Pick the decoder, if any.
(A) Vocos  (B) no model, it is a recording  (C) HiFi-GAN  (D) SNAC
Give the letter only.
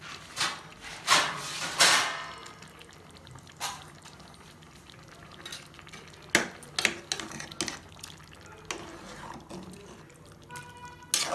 B